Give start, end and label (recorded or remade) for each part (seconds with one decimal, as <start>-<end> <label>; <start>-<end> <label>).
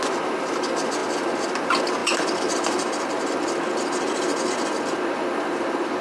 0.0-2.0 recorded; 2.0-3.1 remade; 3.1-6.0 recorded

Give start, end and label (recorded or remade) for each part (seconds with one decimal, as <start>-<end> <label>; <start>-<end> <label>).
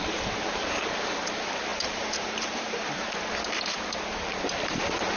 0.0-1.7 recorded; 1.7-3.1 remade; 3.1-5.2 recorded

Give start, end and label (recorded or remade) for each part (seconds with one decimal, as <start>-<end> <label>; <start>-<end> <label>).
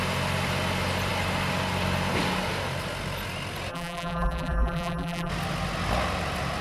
0.0-3.7 recorded; 3.7-5.3 remade; 5.3-6.6 recorded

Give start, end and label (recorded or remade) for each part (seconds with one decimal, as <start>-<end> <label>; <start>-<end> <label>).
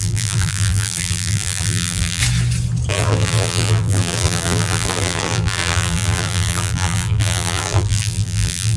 0.0-2.2 remade; 2.2-2.9 recorded; 2.9-8.8 remade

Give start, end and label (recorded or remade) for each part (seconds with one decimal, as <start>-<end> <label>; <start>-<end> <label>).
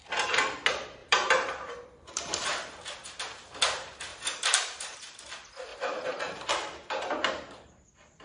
0.0-1.0 recorded; 1.0-3.2 remade; 3.2-4.1 recorded; 4.1-5.2 remade; 5.2-5.7 recorded; 5.7-6.5 remade; 6.5-8.2 recorded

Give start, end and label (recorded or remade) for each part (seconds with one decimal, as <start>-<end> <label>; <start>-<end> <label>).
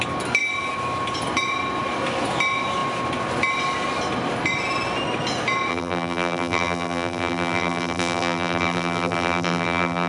0.0-5.7 recorded; 5.7-10.1 remade